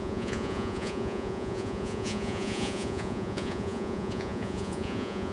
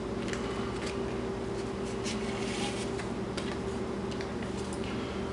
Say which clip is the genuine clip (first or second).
second